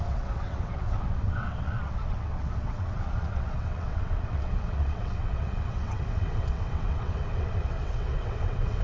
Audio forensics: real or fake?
fake